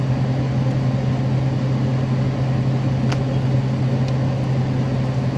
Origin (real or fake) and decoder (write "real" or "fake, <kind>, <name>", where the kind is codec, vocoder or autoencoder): real